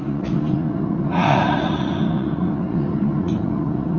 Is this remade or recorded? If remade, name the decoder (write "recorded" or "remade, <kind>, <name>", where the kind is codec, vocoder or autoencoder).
remade, vocoder, Vocos